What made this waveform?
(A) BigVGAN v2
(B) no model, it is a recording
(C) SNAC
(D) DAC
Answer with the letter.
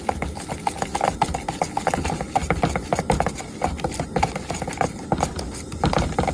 B